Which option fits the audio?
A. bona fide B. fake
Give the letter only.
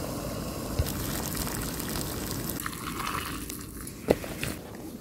A